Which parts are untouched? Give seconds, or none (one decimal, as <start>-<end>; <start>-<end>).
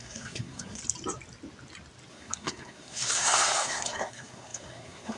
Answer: 0.8-2.1